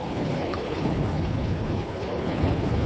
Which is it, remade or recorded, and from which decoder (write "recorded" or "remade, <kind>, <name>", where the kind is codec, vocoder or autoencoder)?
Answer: remade, codec, HILCodec